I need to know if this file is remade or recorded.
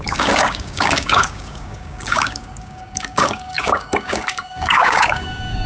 remade